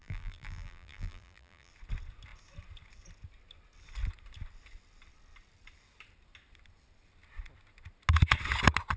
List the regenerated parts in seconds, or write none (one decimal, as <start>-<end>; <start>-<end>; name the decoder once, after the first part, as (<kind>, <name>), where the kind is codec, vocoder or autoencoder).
0.0-1.7 (vocoder, BigVGAN v2)